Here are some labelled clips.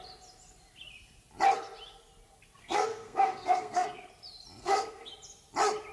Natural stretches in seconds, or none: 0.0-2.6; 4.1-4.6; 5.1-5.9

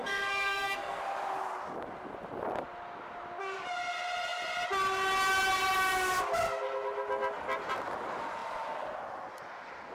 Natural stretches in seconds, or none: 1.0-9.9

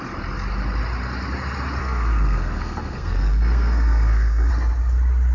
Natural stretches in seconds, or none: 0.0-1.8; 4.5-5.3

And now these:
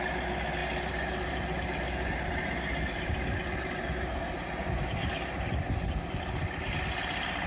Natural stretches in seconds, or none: 0.0-7.5

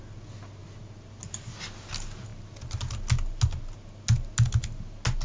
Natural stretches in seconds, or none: 0.0-5.2